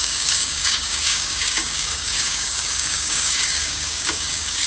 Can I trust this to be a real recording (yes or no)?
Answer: no